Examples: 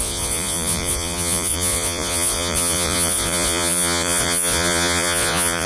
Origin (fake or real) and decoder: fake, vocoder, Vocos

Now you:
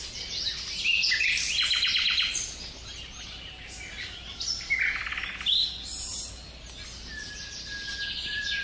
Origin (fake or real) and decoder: real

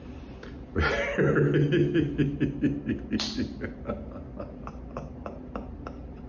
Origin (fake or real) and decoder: real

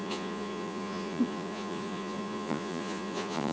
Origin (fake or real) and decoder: fake, vocoder, Vocos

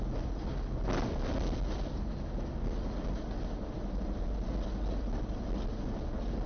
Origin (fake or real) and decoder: real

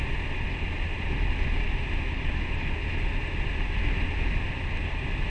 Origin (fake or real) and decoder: real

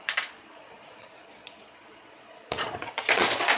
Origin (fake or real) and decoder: fake, vocoder, Vocos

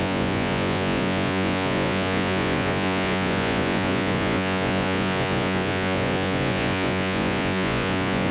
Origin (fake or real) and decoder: fake, vocoder, Vocos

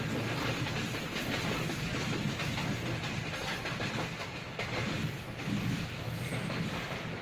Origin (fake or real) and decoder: real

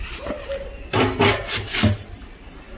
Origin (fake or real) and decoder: real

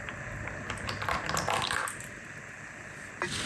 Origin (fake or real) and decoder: real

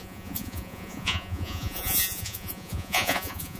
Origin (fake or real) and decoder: fake, vocoder, Vocos